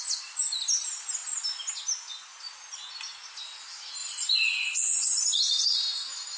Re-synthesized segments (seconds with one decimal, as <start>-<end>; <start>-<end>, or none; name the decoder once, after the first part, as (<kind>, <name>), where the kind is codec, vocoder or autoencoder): 4.0-5.2 (vocoder, BigVGAN v2)